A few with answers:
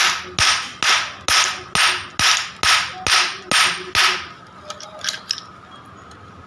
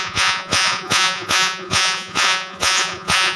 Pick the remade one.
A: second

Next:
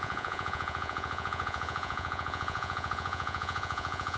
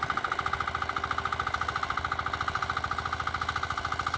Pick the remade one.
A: first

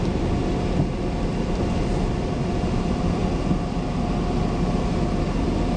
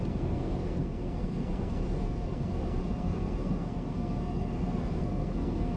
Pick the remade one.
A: second